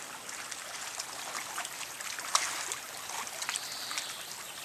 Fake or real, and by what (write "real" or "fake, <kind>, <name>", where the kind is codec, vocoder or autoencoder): real